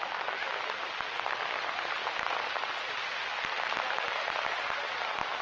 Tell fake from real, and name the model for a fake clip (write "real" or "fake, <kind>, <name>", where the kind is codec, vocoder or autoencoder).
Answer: real